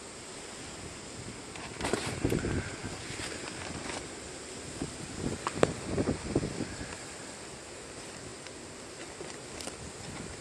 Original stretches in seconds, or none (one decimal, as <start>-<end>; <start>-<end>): 0.0-10.4